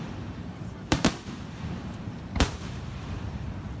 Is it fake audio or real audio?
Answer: fake